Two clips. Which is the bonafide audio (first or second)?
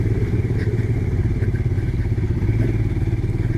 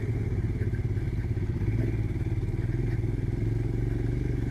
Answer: second